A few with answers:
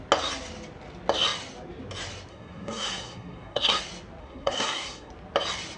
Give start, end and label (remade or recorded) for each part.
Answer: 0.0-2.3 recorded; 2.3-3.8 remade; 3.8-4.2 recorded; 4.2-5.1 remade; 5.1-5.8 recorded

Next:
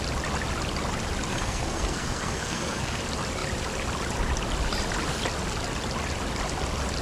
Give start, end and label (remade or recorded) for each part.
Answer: 0.0-1.3 recorded; 1.3-3.0 remade; 3.0-7.0 recorded

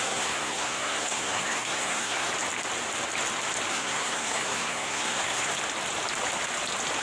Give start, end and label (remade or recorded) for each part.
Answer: 0.0-2.3 remade; 2.3-3.7 recorded; 3.7-5.5 remade; 5.5-7.0 recorded

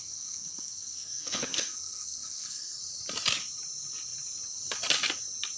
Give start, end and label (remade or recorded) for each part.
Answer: 0.0-2.8 remade; 2.8-5.6 recorded

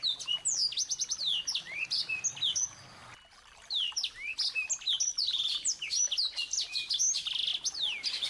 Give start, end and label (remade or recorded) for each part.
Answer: 0.0-8.3 recorded

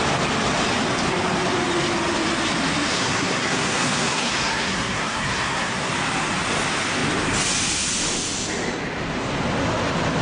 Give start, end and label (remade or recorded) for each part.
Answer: 0.0-2.9 recorded; 2.9-5.9 remade; 5.9-10.2 recorded

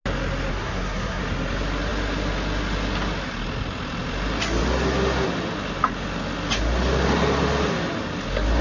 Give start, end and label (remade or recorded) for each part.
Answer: 0.0-0.5 recorded; 0.5-1.2 remade; 1.2-8.6 recorded

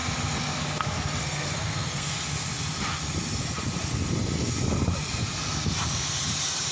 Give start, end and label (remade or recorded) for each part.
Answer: 0.0-1.2 recorded; 1.2-2.1 remade; 2.1-6.7 recorded